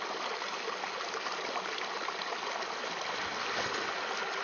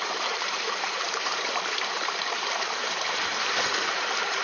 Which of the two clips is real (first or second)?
first